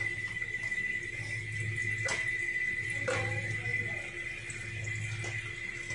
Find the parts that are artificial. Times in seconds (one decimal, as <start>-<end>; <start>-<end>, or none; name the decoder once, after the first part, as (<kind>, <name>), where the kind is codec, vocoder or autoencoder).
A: none

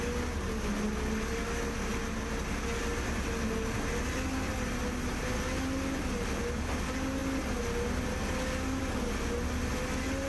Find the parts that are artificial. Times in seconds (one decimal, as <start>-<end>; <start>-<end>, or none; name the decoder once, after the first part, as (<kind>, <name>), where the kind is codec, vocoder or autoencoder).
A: none

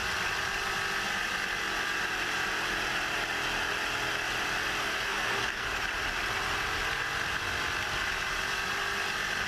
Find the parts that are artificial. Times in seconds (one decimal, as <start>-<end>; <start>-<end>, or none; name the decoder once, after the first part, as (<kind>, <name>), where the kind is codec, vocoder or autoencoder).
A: 4.8-5.8 (codec, SNAC)

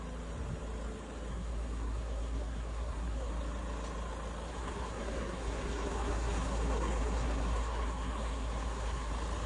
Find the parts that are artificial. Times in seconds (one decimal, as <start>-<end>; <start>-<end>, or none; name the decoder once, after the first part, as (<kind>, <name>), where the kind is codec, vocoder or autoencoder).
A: 1.3-3.3 (codec, SNAC); 4.5-9.1